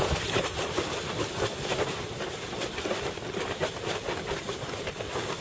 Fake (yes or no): no